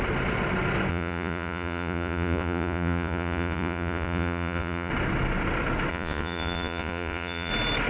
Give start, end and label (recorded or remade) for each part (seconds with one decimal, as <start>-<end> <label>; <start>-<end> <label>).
0.0-0.9 recorded; 0.9-4.9 remade; 4.9-5.9 recorded; 5.9-7.5 remade; 7.5-7.9 recorded